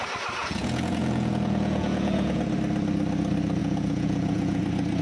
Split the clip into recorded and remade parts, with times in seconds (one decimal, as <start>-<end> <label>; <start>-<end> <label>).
0.0-0.4 recorded; 0.4-2.4 remade; 2.4-3.6 recorded; 3.6-4.6 remade; 4.6-5.0 recorded